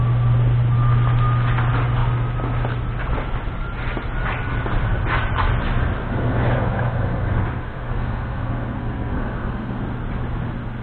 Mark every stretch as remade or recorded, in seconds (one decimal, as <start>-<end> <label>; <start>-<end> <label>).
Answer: 0.0-6.0 recorded; 6.0-9.8 remade; 9.8-10.8 recorded